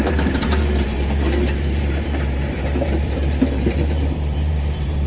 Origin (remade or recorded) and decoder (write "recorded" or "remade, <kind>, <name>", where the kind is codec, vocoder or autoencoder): remade, vocoder, BigVGAN v2